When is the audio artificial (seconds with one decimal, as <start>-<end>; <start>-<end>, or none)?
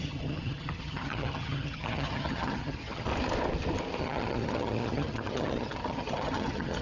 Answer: 0.0-3.1; 4.0-6.8